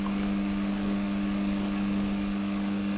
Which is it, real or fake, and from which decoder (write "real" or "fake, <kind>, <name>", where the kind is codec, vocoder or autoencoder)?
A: fake, codec, DAC